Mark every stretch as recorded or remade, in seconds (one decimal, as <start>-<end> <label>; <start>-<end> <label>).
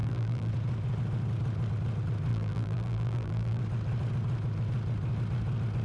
0.0-0.5 remade; 0.5-2.3 recorded; 2.3-3.6 remade; 3.6-5.8 recorded